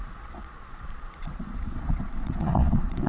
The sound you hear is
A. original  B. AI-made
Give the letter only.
B